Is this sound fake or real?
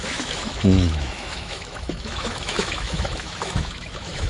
fake